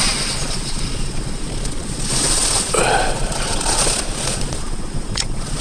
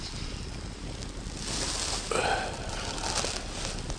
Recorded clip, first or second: second